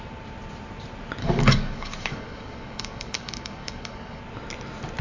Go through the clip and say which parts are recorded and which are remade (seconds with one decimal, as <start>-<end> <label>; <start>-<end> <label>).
0.0-1.2 recorded; 1.2-4.2 remade; 4.2-5.0 recorded

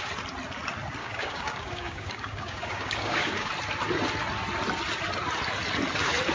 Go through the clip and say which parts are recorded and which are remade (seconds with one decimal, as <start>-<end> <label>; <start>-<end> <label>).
0.0-1.0 recorded; 1.0-3.5 remade; 3.5-6.3 recorded

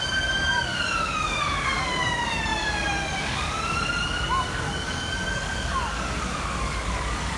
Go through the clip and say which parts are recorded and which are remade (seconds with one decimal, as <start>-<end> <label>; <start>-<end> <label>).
0.0-7.4 remade

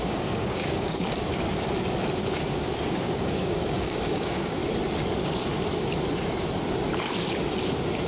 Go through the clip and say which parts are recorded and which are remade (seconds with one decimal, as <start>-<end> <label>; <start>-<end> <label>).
0.0-1.3 remade; 1.3-2.2 recorded; 2.2-4.6 remade; 4.6-8.1 recorded

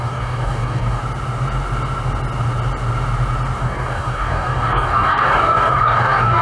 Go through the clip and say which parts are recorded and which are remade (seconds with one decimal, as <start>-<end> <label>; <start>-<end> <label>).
0.0-1.0 remade; 1.0-3.6 recorded; 3.6-6.4 remade

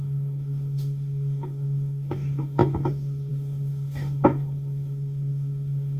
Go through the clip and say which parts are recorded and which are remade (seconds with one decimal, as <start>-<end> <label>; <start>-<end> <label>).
0.0-6.0 remade

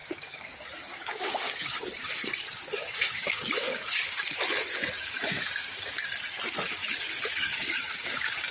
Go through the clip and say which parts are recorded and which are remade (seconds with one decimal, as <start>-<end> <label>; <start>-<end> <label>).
0.0-4.4 remade; 4.4-5.3 recorded; 5.3-6.1 remade; 6.1-6.8 recorded; 6.8-8.5 remade

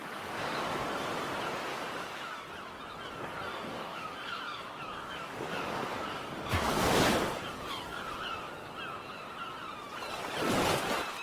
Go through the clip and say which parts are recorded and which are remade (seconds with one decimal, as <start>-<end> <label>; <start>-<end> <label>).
0.0-0.7 remade; 0.7-1.7 recorded; 1.7-2.3 remade; 2.3-3.5 recorded; 3.5-8.7 remade; 8.7-11.2 recorded